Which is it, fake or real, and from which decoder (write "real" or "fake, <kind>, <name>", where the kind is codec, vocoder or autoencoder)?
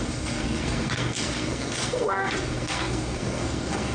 fake, codec, SNAC